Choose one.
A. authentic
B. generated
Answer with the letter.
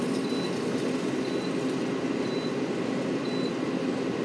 A